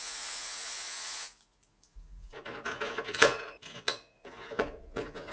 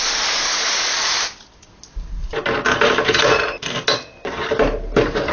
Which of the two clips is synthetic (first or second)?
first